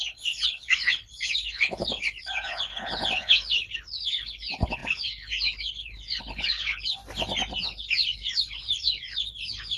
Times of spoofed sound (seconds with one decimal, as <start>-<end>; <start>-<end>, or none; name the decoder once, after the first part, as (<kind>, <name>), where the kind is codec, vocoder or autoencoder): 0.0-7.0 (codec, HILCodec); 7.6-9.8